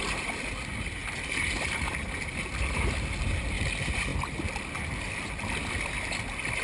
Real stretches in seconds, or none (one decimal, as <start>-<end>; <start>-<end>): 0.0-6.6